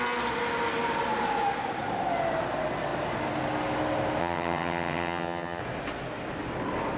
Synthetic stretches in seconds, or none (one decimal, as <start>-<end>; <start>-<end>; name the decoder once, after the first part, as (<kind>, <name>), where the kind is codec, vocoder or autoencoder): 4.2-5.6 (vocoder, HiFi-GAN)